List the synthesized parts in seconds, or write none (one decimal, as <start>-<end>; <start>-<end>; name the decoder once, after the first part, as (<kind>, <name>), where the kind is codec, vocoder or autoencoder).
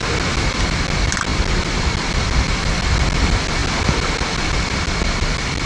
none